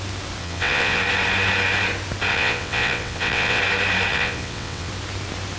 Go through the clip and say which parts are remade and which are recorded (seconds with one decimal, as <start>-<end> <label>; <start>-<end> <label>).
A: 0.0-0.4 recorded; 0.4-1.0 remade; 1.0-2.3 recorded; 2.3-3.6 remade; 3.6-4.1 recorded; 4.1-4.9 remade; 4.9-5.6 recorded